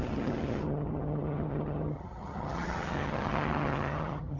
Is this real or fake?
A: fake